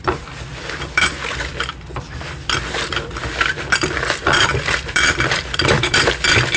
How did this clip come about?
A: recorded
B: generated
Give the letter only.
B